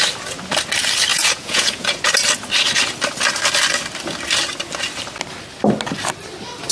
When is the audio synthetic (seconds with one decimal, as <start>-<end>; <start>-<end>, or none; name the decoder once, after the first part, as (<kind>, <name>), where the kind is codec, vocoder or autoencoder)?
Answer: 1.1-2.0 (vocoder, Vocos)